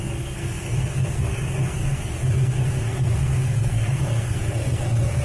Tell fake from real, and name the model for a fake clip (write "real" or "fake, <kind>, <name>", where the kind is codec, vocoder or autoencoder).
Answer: fake, codec, SNAC